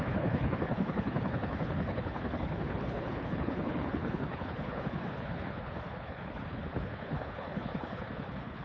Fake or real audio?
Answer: fake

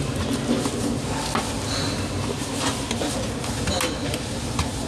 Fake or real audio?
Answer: real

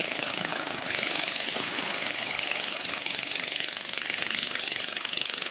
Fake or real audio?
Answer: fake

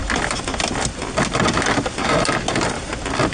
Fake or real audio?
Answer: real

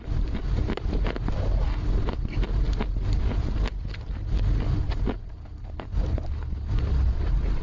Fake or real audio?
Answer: real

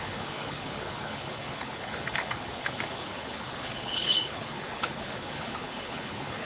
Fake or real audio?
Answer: fake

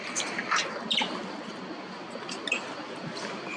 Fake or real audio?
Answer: real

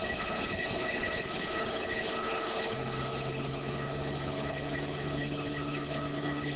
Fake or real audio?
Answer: fake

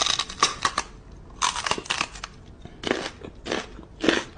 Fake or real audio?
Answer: real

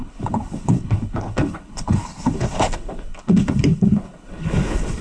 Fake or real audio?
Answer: fake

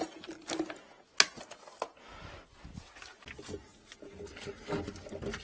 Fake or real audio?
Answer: real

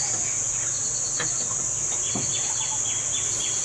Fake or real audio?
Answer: real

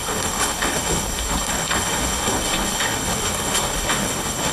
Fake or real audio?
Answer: fake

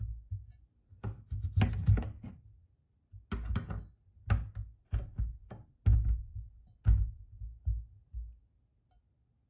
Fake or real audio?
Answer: real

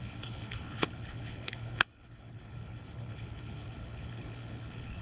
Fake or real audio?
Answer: fake